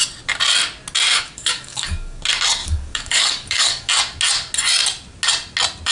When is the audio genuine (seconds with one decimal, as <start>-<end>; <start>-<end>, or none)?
0.0-1.1; 2.2-2.6; 3.9-5.9